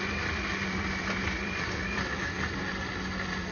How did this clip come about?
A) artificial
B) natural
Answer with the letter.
A